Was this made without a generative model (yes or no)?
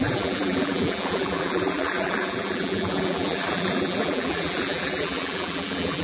no